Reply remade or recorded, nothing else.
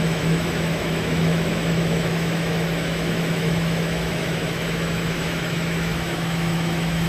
remade